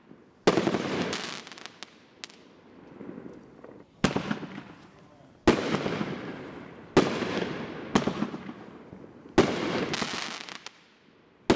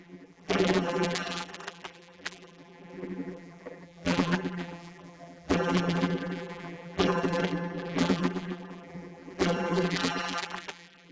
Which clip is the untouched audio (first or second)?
first